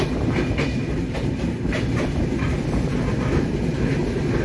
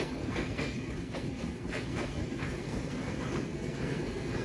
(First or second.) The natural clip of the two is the first